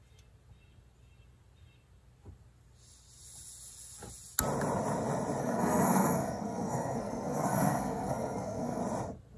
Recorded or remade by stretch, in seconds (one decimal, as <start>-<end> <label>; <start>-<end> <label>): 0.0-5.4 recorded; 5.4-8.8 remade; 8.8-9.4 recorded